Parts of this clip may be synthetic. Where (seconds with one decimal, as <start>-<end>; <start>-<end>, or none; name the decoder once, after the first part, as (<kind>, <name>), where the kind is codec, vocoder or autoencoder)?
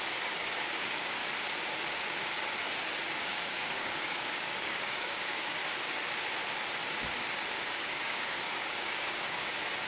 0.0-1.2 (codec, DAC); 3.2-5.6; 7.5-9.9